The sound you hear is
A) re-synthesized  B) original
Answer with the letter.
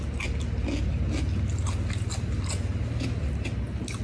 B